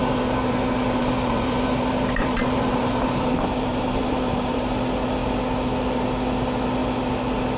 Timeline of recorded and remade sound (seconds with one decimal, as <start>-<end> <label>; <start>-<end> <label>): 0.0-4.6 remade; 4.6-7.6 recorded